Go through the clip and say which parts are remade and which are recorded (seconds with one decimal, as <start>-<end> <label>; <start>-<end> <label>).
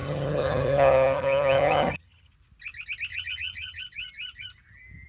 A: 0.0-2.3 remade; 2.3-3.1 recorded; 3.1-3.8 remade; 3.8-5.1 recorded